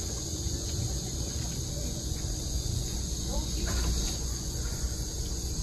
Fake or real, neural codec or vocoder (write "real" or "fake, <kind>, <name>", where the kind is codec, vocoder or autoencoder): fake, vocoder, Vocos